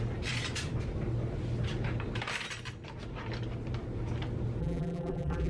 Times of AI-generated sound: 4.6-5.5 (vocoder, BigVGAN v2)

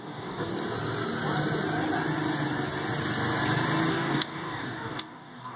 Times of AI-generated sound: 0.0-0.5 (codec, DAC); 3.9-5.6